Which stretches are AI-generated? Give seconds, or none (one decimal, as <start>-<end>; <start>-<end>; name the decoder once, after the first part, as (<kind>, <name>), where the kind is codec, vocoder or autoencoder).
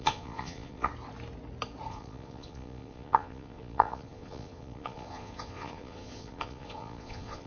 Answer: 0.0-0.9 (vocoder, Vocos); 1.9-7.5